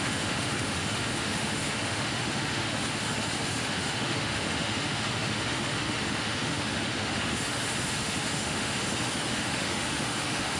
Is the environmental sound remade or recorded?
remade